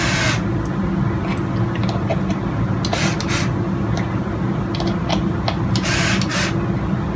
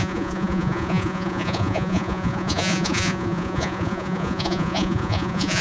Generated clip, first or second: second